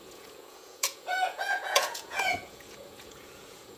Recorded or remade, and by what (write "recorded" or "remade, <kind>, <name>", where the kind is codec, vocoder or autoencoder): remade, vocoder, Vocos